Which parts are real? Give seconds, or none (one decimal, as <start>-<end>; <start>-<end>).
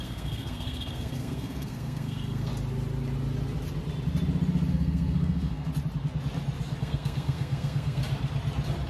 2.5-4.7; 5.7-6.8; 8.0-8.9